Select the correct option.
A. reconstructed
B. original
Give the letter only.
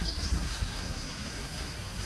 A